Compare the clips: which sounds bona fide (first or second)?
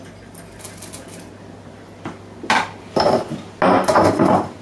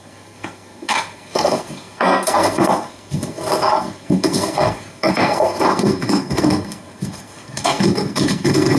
first